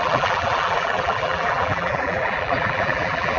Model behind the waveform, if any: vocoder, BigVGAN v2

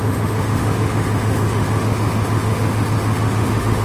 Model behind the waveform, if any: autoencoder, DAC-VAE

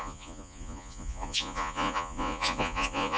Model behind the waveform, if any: vocoder, Vocos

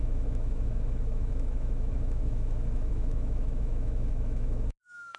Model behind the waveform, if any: autoencoder, DAC-VAE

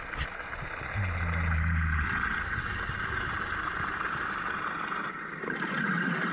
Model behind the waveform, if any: none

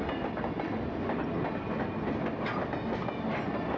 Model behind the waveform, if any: none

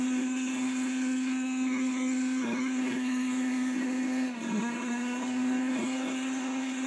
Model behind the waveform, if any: codec, SNAC